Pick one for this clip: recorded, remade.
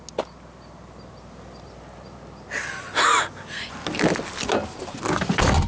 recorded